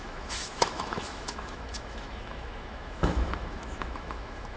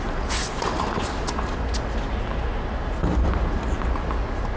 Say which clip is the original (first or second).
second